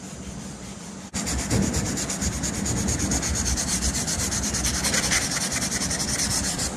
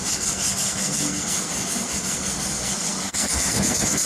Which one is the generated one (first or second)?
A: second